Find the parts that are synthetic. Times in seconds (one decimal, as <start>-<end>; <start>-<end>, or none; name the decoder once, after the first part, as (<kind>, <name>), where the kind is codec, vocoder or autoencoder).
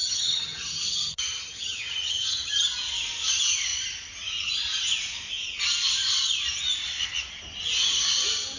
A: 0.0-2.6 (vocoder, HiFi-GAN)